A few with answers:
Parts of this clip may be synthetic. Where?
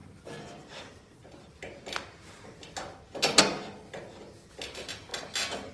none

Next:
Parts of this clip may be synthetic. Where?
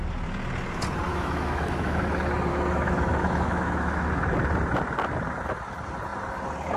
1.1-2.0 (autoencoder, DAC-VAE); 2.5-4.1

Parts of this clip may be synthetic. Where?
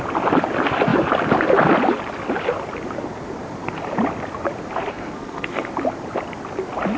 4.9-5.7 (codec, SNAC)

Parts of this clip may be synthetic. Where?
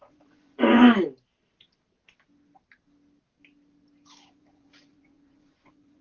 0.0-0.8 (vocoder, Vocos); 4.3-6.0